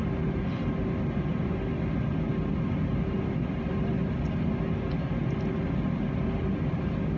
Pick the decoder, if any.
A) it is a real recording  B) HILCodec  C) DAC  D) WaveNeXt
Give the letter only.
A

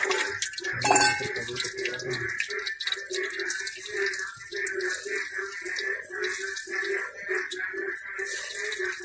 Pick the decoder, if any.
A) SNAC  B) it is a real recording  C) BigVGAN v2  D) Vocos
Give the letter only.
B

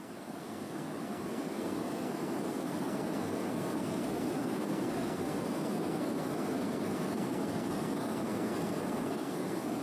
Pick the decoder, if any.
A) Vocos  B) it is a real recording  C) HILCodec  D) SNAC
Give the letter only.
D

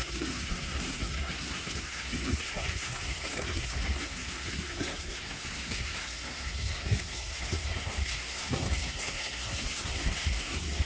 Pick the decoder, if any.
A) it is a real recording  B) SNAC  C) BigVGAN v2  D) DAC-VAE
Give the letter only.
B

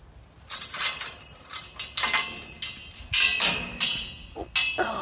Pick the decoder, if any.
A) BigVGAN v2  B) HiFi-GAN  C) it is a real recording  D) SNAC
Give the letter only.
C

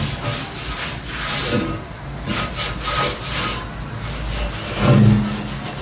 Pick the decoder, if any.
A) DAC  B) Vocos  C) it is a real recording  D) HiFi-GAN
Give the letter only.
C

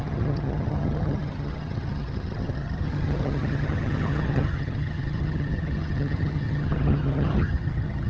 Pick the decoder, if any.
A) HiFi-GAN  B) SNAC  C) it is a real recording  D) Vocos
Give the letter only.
A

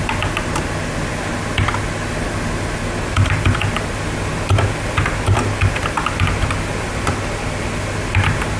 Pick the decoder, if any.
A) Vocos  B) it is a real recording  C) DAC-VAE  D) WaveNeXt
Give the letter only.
B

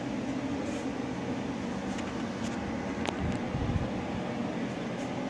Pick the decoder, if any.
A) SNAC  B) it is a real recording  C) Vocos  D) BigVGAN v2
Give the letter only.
B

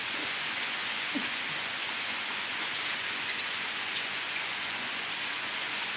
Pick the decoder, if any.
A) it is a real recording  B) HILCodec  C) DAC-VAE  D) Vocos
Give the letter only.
D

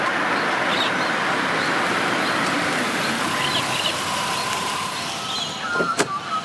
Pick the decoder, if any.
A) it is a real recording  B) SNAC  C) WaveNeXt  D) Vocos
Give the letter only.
A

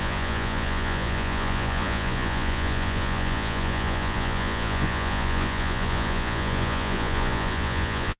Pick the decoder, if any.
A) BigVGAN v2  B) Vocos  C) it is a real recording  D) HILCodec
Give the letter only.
B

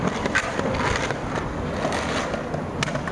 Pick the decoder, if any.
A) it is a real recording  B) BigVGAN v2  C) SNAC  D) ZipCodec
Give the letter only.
A